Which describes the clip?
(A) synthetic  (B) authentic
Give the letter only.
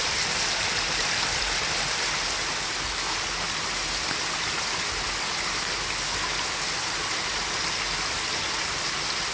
B